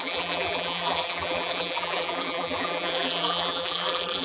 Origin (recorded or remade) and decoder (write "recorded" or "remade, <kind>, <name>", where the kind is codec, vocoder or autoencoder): remade, vocoder, BigVGAN v2